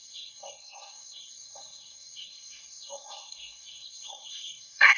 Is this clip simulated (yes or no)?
yes